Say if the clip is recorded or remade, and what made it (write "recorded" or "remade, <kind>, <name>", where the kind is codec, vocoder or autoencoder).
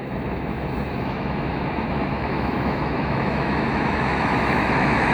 remade, autoencoder, DAC-VAE